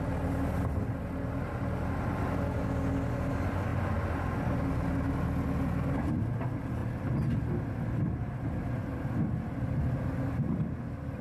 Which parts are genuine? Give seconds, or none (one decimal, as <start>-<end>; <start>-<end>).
0.0-11.2

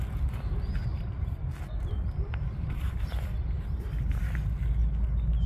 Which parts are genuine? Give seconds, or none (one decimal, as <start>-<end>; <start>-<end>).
0.0-0.9; 4.2-5.5

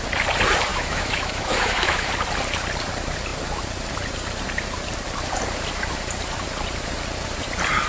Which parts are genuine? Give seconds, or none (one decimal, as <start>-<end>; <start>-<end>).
0.0-0.7; 2.1-7.9

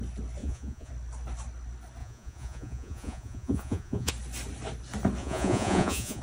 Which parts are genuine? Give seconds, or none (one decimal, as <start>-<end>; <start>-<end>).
0.0-0.4; 0.9-2.0; 4.1-5.2

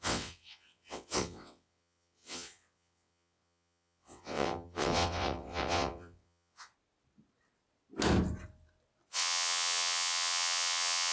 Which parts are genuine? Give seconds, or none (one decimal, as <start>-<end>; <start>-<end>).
6.7-9.1

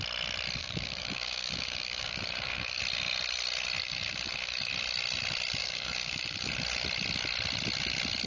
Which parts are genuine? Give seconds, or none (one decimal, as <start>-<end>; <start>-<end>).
0.0-0.6; 2.8-3.8; 4.7-5.6; 6.5-8.3

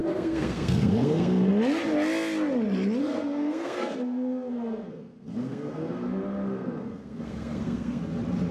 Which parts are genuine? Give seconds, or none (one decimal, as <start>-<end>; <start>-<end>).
1.5-3.0; 8.0-8.5

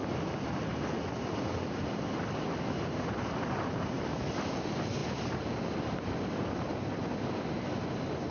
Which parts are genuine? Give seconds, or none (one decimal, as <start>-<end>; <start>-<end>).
0.0-8.3